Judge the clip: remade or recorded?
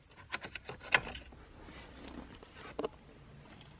recorded